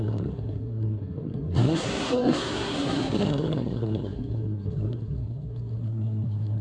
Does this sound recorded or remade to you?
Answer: remade